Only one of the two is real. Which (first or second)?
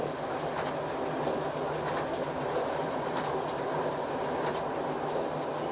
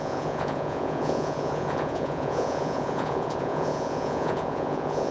first